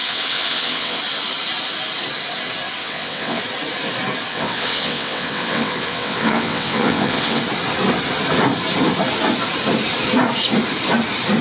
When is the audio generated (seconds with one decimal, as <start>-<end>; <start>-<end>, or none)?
0.0-1.0; 2.8-3.4; 4.3-7.4